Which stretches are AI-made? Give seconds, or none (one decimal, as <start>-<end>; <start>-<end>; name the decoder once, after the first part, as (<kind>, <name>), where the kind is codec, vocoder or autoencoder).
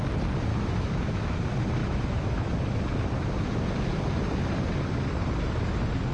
0.5-1.4 (autoencoder, DAC-VAE); 1.8-2.5